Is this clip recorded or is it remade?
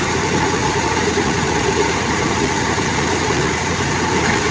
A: remade